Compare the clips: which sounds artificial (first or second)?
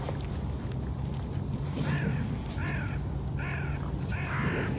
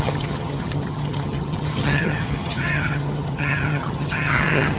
second